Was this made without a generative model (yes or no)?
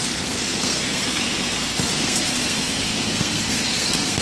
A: no